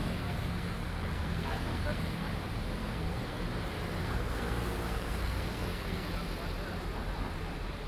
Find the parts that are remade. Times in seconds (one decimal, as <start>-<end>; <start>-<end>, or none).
0.0-2.3; 2.8-3.4; 4.0-6.1